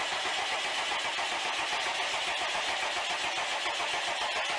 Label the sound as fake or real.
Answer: real